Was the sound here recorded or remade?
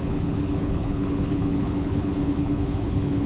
remade